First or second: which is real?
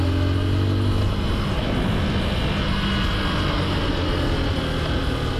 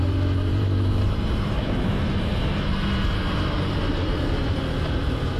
first